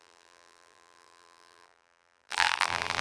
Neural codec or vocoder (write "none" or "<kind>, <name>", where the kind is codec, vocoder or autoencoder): vocoder, BigVGAN v2